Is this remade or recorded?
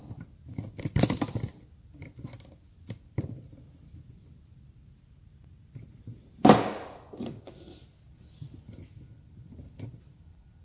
recorded